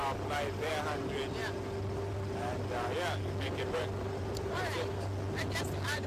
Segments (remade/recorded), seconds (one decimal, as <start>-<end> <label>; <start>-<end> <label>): 0.0-6.1 recorded